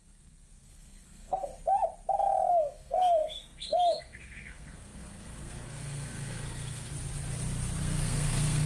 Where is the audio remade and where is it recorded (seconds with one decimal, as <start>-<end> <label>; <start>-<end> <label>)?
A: 0.0-1.5 remade; 1.5-2.5 recorded; 2.5-6.9 remade; 6.9-7.8 recorded; 7.8-8.7 remade